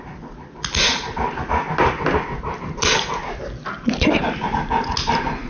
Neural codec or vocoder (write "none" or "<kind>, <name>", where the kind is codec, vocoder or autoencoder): none